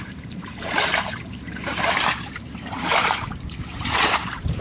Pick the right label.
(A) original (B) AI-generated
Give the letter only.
B